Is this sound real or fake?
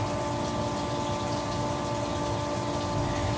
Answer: real